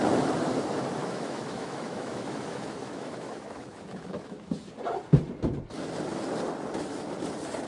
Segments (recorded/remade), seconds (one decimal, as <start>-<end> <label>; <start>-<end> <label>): 0.0-1.0 recorded; 1.0-4.7 remade; 4.7-7.7 recorded